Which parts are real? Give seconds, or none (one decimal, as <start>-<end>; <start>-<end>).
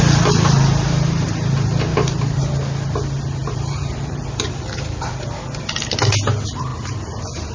0.0-1.9; 2.4-3.4; 5.7-7.5